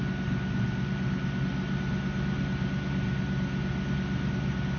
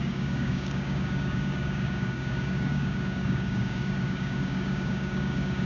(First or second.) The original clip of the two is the first